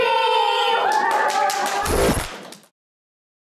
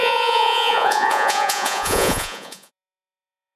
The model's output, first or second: second